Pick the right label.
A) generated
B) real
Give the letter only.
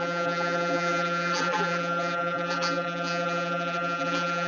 A